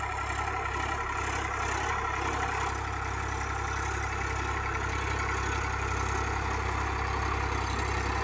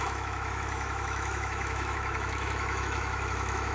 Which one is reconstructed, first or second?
second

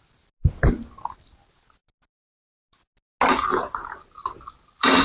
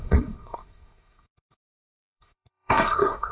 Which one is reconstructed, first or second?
second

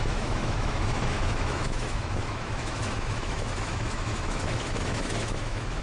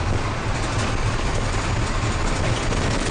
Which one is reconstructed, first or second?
first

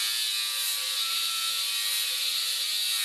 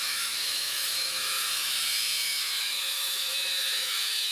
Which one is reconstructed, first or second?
second